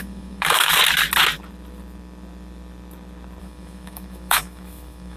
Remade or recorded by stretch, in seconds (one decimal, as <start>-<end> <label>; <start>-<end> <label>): 0.0-0.7 remade; 0.7-3.4 recorded; 3.4-5.2 remade